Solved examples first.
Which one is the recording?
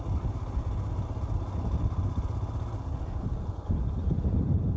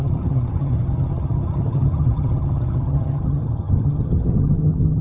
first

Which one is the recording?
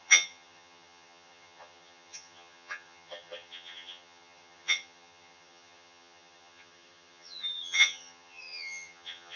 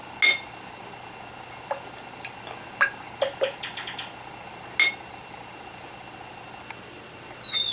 second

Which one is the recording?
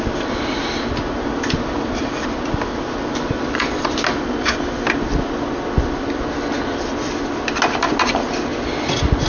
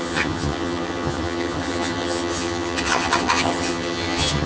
first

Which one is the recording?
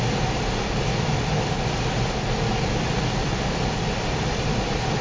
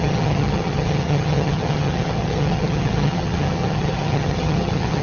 first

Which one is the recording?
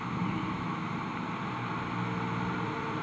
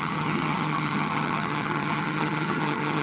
first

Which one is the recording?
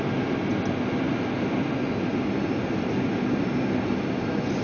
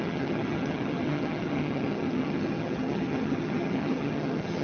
first